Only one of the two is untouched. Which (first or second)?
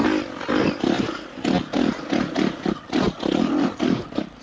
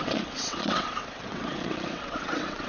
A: first